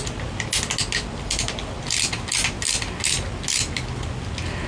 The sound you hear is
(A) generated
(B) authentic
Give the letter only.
B